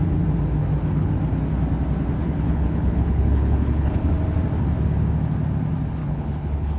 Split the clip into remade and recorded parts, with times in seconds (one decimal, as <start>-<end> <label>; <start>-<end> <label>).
0.0-0.6 recorded; 0.6-1.1 remade; 1.1-2.2 recorded; 2.2-4.1 remade; 4.1-6.0 recorded; 6.0-6.8 remade